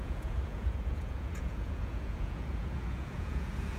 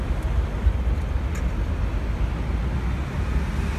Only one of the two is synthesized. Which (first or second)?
first